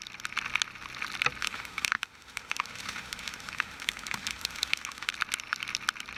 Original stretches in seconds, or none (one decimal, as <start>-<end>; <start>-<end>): 0.0-1.4; 5.1-6.2